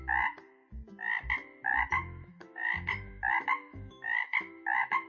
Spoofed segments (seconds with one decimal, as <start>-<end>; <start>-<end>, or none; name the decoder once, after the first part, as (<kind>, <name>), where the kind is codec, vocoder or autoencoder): 1.7-5.1 (autoencoder, DAC-VAE)

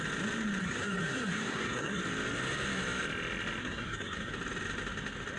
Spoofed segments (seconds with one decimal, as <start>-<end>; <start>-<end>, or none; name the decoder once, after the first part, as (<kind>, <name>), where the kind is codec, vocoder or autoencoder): 0.6-2.0 (codec, SNAC); 3.6-4.3

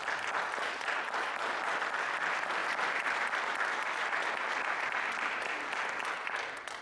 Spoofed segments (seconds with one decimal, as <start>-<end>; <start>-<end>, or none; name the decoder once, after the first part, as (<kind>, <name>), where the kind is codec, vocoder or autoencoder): none

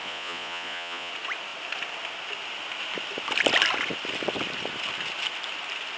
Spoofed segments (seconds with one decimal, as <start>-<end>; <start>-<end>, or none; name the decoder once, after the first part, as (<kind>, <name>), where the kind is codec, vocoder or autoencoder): 0.0-1.1 (vocoder, Vocos)

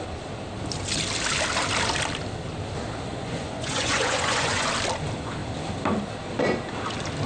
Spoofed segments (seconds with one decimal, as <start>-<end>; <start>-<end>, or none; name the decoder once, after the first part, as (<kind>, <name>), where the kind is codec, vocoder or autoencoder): 3.1-4.7 (vocoder, Vocos)

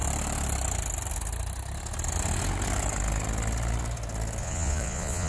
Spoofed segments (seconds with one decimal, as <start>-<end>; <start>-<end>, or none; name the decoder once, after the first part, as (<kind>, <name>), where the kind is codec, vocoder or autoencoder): 4.4-5.3 (vocoder, Vocos)

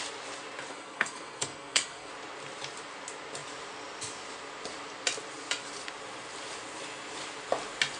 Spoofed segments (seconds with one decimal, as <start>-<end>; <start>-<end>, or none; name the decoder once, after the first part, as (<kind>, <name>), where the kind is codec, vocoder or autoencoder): 0.7-2.1 (codec, SNAC)

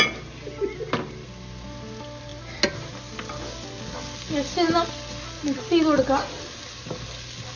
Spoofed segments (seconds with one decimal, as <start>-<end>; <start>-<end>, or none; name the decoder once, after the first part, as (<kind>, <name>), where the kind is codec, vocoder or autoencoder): none